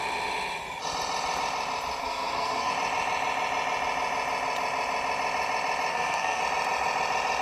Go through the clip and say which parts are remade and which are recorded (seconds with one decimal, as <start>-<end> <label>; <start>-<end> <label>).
0.0-2.0 recorded; 2.0-2.7 remade; 2.7-5.9 recorded; 5.9-6.4 remade; 6.4-7.4 recorded